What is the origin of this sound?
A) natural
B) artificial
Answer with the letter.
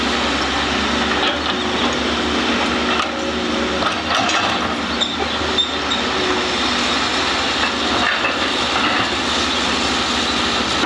A